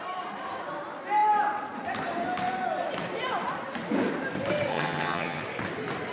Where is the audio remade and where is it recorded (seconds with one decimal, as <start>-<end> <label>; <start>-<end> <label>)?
0.0-4.7 recorded; 4.7-5.4 remade; 5.4-6.1 recorded